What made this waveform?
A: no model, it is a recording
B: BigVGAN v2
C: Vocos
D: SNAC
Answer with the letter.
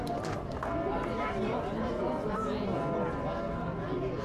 A